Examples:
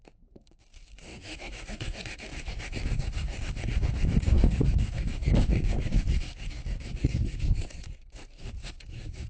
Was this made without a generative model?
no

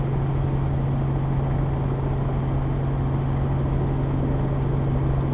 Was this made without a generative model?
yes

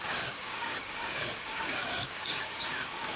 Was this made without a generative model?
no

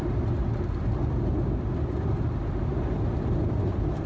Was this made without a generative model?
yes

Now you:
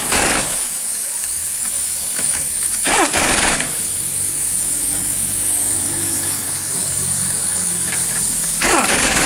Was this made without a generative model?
no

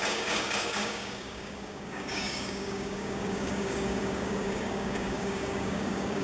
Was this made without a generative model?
no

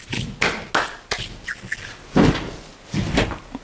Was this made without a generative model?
yes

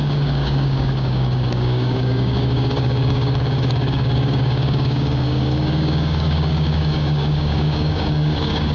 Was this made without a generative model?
no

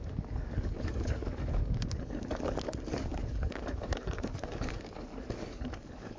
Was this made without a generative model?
no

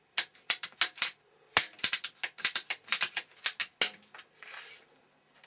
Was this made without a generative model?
yes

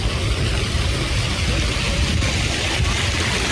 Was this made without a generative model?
yes